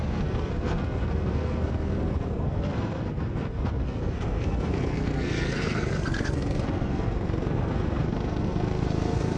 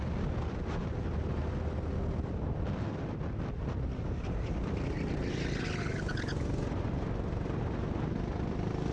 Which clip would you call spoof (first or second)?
first